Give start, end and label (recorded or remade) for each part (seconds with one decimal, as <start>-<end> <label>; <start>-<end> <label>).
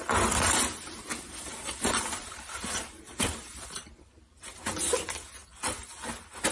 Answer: 0.0-1.0 recorded; 1.0-4.2 remade; 4.2-6.5 recorded